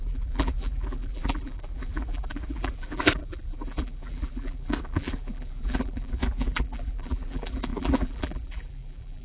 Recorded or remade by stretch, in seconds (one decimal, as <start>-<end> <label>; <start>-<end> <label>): 0.0-9.2 remade